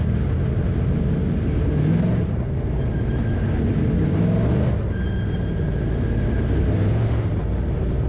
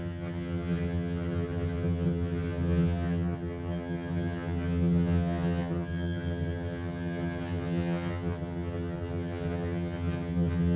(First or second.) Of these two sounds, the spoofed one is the second